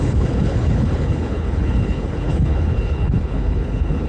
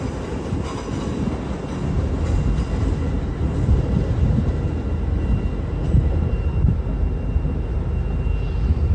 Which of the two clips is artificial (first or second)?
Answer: first